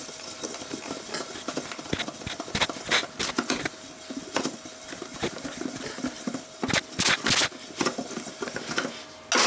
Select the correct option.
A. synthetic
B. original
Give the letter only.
B